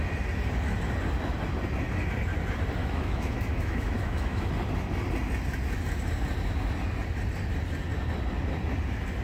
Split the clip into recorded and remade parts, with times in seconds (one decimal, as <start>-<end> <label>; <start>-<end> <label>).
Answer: 0.0-2.8 recorded; 2.8-4.5 remade; 4.5-9.2 recorded